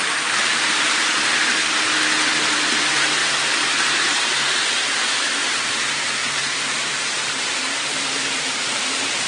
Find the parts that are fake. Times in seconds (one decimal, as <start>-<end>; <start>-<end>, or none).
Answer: 0.0-1.0; 2.3-3.2; 4.3-9.3

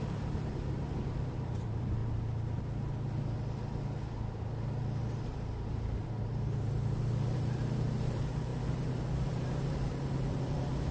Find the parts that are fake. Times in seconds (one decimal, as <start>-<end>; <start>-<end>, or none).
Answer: 0.0-2.0; 6.1-8.5; 9.0-10.9